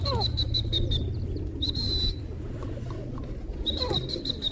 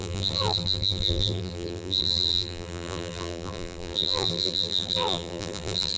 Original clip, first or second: first